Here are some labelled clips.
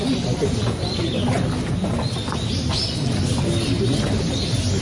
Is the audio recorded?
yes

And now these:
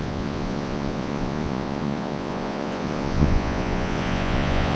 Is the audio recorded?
no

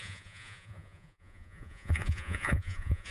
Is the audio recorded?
no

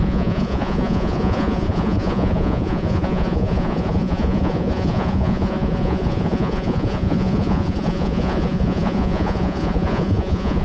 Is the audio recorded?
no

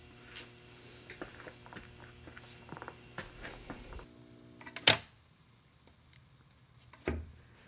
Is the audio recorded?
yes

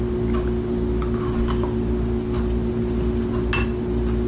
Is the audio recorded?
yes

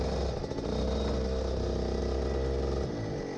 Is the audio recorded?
yes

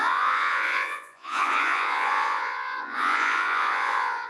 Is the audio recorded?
no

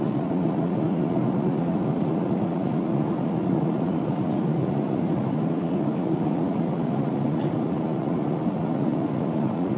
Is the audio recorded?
no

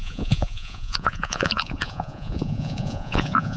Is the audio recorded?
no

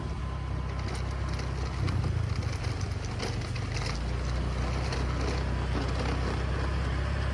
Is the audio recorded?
yes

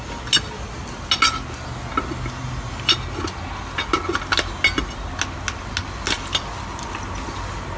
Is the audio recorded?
yes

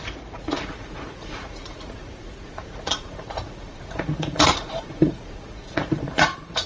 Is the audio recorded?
no